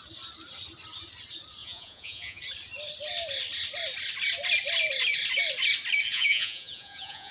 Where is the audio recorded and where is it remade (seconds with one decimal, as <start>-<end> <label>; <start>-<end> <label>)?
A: 0.0-1.6 recorded; 1.6-2.4 remade; 2.4-6.1 recorded; 6.1-7.3 remade